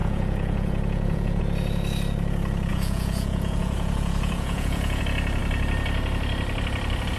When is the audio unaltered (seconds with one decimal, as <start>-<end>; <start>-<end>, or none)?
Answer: 1.4-2.7; 5.0-7.2